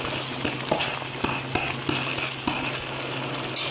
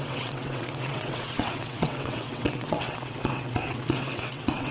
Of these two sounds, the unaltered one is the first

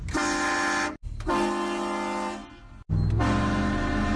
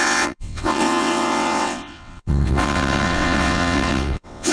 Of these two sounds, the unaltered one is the first